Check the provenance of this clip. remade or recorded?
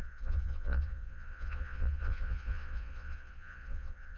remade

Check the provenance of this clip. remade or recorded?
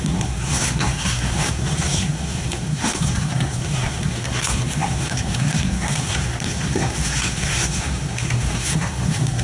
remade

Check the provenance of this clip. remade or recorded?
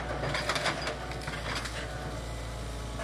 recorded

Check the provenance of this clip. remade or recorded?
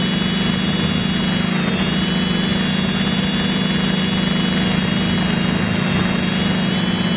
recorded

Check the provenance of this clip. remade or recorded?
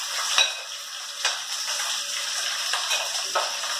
recorded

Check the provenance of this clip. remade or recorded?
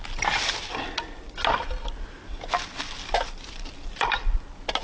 recorded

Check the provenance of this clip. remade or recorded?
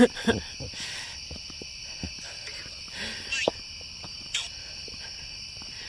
recorded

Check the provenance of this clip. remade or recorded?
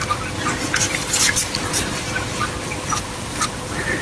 recorded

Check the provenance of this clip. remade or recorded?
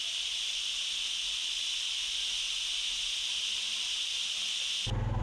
recorded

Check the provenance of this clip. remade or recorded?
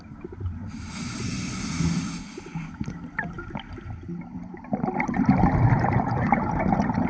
recorded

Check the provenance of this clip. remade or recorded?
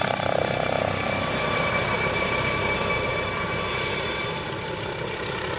remade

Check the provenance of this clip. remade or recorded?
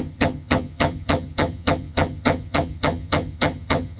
remade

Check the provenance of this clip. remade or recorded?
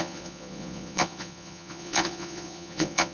remade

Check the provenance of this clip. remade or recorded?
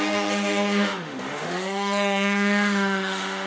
remade